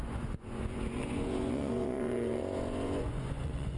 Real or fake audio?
fake